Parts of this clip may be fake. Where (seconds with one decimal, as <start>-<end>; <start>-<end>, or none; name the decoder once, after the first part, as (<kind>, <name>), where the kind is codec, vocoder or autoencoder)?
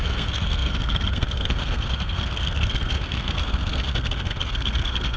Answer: 0.0-5.2 (codec, SNAC)